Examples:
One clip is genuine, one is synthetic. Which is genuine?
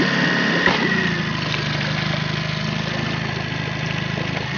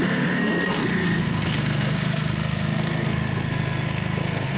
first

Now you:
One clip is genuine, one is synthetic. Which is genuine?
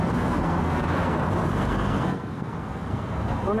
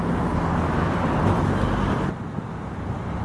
second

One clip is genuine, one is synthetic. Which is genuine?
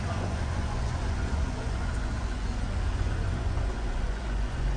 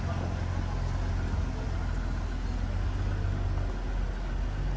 second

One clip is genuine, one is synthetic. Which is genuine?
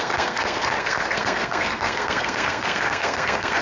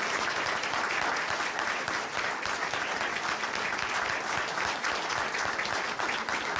second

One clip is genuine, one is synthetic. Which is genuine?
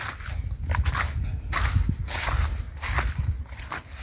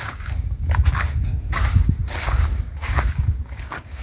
first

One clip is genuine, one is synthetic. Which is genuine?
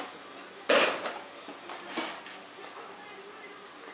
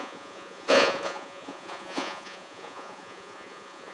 first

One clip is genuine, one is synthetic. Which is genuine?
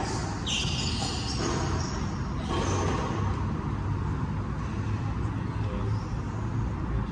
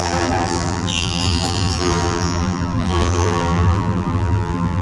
first